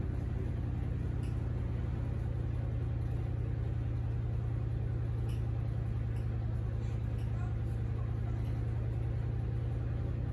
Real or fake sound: real